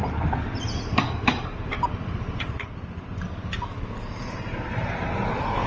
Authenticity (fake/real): real